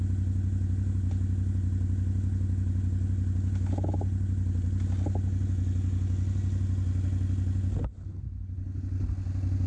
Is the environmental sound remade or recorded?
recorded